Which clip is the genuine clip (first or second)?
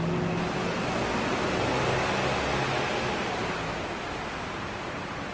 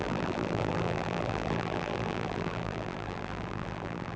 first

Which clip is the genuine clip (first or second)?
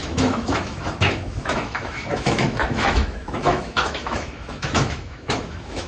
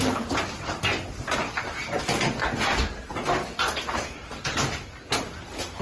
second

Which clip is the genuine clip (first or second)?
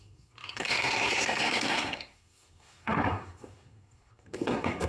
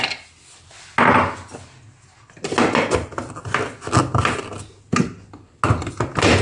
second